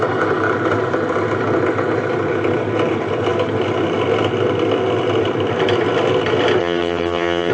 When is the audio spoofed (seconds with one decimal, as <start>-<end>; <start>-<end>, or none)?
6.6-7.5